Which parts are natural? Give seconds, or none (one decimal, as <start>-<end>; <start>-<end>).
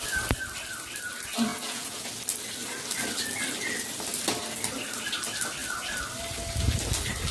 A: 0.0-1.5; 2.1-7.3